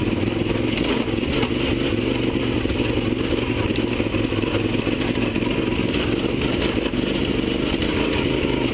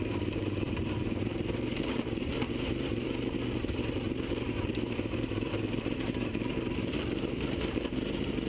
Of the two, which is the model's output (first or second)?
second